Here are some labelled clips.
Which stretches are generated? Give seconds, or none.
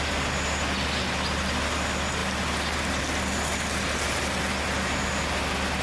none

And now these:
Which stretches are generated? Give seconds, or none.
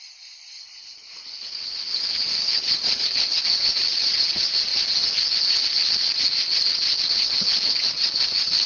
0.6-2.0 (codec, HILCodec); 2.4-3.4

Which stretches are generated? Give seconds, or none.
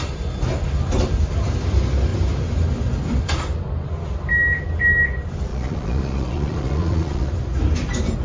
5.5-7.3 (vocoder, Vocos)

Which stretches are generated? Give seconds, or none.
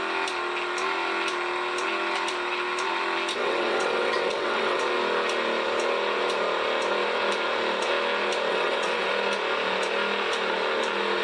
3.4-4.8 (vocoder, WaveNeXt); 8.5-9.1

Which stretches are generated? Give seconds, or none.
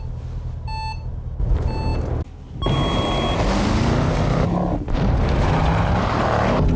none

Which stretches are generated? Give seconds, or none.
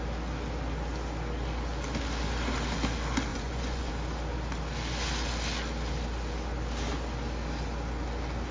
3.3-3.9 (vocoder, Vocos)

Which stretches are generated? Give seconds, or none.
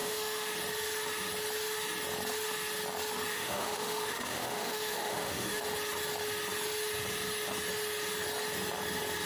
0.0-0.5 (autoencoder, DAC-VAE); 3.3-5.6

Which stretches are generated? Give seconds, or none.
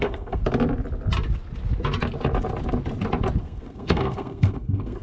0.0-0.4 (codec, SNAC); 3.4-5.0